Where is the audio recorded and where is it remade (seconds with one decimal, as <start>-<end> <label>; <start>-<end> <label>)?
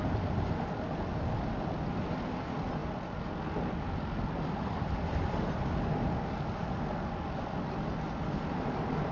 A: 0.0-9.1 recorded